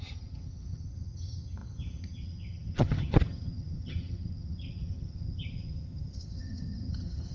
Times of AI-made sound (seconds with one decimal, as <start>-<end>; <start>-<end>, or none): 0.0-7.3